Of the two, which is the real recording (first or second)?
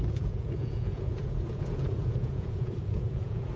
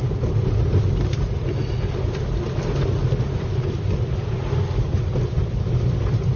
second